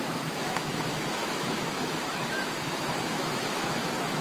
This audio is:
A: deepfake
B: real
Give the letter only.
A